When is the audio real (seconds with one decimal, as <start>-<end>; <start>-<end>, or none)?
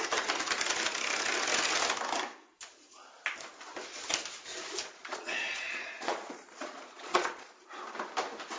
0.0-4.8; 7.5-8.6